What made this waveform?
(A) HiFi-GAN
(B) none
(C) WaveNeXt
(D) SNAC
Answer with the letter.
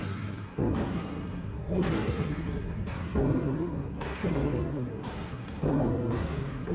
D